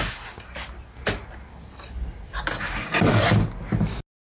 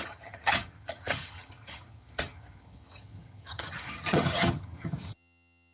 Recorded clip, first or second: first